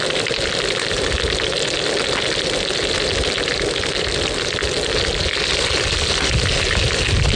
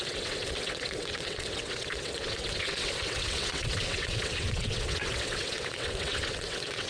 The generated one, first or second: second